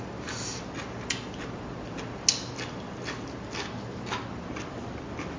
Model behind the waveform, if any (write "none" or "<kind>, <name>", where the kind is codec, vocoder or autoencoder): none